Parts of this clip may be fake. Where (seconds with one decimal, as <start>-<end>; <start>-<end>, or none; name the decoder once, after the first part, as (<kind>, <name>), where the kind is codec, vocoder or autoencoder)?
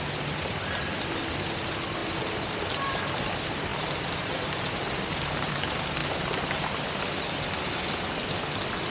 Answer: 2.0-2.6 (vocoder, BigVGAN v2); 3.7-5.3; 6.0-6.8